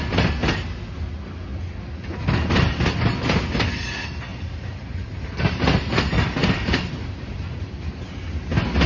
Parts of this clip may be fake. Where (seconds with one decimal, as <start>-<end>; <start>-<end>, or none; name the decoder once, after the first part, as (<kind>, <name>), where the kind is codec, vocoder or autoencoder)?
4.3-5.5 (vocoder, BigVGAN v2); 6.4-7.7